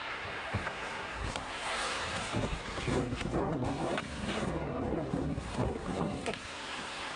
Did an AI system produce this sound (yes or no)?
yes